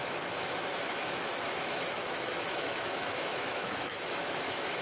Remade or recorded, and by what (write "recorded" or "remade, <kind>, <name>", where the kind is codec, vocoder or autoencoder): remade, autoencoder, DAC-VAE